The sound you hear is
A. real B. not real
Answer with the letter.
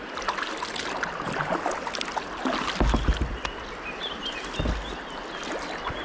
A